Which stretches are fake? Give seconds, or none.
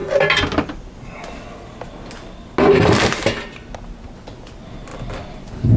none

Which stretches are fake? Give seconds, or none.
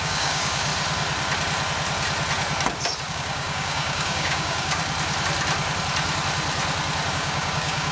0.0-0.7 (codec, DAC); 3.1-4.8; 7.1-7.9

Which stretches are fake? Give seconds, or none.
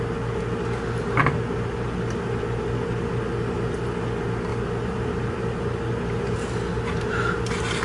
none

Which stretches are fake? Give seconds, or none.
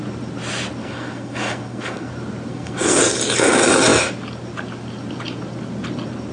0.8-2.1 (codec, SNAC); 2.5-3.0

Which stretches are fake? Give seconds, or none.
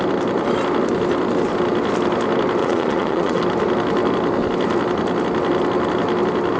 2.6-3.4 (vocoder, Vocos)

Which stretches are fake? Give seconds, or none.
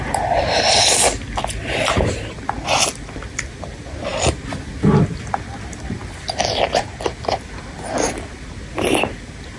none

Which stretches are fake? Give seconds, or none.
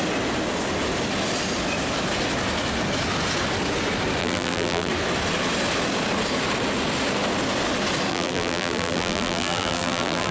4.2-4.9 (vocoder, BigVGAN v2); 8.1-10.3